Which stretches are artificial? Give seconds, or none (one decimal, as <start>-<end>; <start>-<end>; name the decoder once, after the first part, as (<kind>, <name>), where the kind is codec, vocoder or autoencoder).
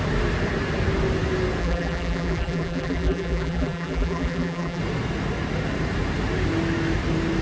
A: 1.6-4.8 (vocoder, BigVGAN v2)